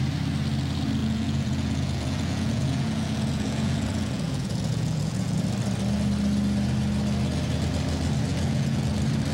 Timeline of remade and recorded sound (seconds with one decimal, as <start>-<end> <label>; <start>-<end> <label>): 0.0-1.0 recorded; 1.0-5.4 remade; 5.4-8.3 recorded; 8.3-8.9 remade; 8.9-9.3 recorded